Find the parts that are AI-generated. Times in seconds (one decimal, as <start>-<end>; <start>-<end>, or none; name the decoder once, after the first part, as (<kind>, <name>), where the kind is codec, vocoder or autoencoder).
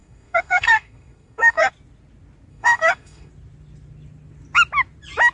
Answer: 0.0-1.7 (codec, SNAC); 2.5-3.3